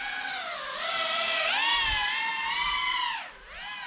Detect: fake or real real